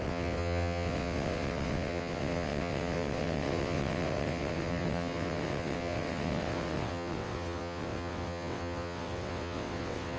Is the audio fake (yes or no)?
yes